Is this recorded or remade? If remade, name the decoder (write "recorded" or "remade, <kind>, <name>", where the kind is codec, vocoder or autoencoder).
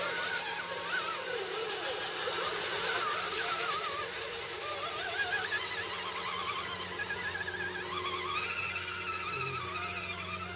recorded